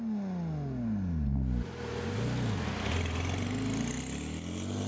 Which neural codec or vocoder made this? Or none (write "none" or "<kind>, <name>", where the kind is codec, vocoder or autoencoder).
none